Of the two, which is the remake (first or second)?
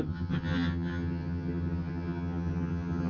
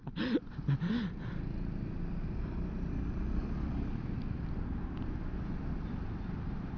first